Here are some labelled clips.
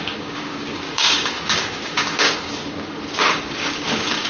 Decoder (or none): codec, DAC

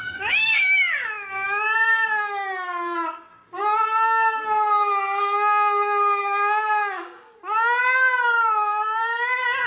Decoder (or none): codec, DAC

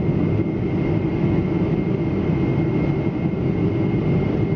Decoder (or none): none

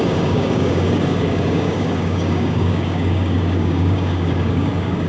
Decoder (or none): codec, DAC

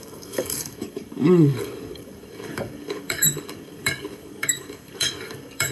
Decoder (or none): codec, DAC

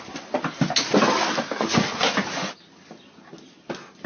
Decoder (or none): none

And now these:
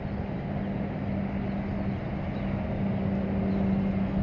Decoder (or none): none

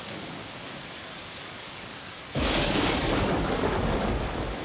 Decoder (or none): codec, DAC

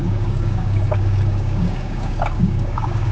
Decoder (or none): codec, DAC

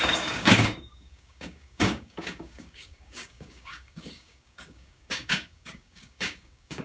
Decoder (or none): codec, DAC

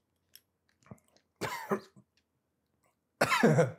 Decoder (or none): none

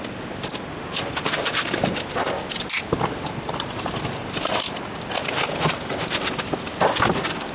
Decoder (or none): none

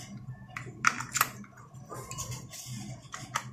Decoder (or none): none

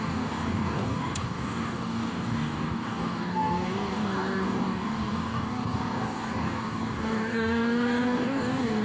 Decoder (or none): codec, DAC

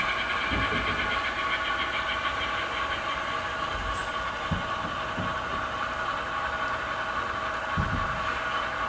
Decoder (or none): none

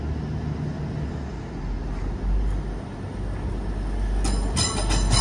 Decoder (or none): none